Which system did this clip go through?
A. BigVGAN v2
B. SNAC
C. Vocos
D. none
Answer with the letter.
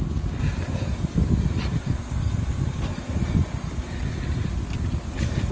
D